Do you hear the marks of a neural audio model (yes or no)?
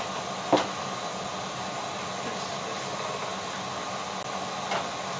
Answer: no